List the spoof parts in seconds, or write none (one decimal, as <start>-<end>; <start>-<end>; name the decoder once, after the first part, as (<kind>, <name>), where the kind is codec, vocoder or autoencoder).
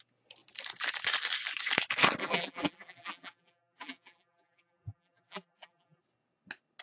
2.2-6.0 (vocoder, BigVGAN v2)